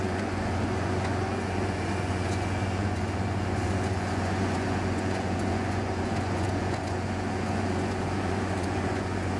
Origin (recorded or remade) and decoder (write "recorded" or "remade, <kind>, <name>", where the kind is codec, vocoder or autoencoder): remade, vocoder, Vocos